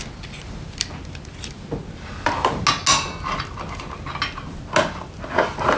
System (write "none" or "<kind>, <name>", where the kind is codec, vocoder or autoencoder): none